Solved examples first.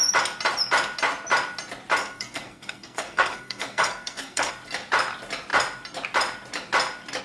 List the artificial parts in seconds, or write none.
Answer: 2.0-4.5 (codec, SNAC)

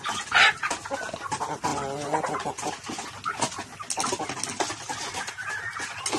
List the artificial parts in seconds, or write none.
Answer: none

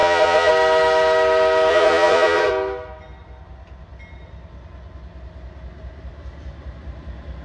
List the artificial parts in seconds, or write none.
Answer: 0.0-0.5 (vocoder, Vocos); 1.7-2.5

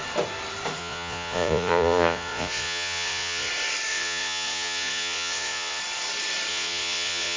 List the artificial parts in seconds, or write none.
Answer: 0.8-3.5 (vocoder, Vocos); 3.9-5.8; 6.5-7.4

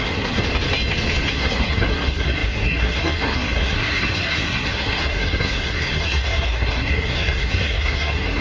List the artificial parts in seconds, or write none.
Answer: 0.0-0.4 (codec, SNAC); 1.3-8.4

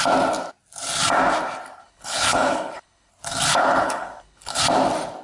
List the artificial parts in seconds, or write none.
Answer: 1.8-3.1 (codec, HILCodec); 3.5-4.6

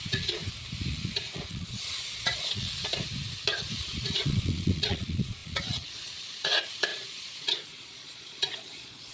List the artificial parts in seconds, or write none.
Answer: 0.0-0.4 (vocoder, Vocos); 0.9-3.0; 3.8-9.1